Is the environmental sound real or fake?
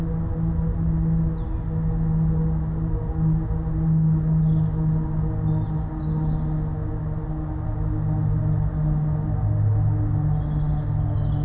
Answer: real